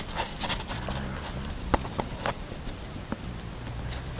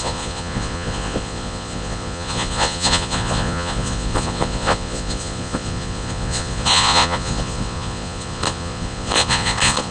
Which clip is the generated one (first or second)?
second